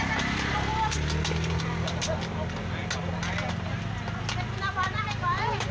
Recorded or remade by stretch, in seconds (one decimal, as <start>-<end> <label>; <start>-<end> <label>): 0.0-5.7 recorded